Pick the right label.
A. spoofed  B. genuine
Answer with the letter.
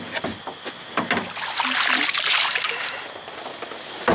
B